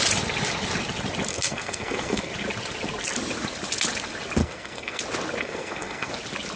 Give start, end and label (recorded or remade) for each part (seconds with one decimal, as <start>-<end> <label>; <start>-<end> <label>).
0.0-1.3 recorded; 1.3-2.3 remade; 2.3-4.4 recorded; 4.4-5.0 remade; 5.0-5.4 recorded; 5.4-6.1 remade; 6.1-6.6 recorded